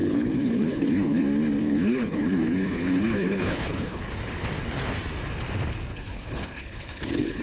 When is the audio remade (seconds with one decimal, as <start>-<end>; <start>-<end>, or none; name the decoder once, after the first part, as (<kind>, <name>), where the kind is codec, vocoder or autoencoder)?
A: 0.0-1.2 (codec, HILCodec); 1.6-4.0; 5.9-7.4